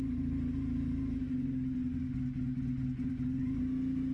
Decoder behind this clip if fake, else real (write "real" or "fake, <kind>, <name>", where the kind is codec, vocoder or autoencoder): real